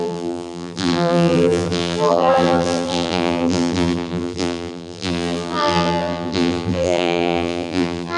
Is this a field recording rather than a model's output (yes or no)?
no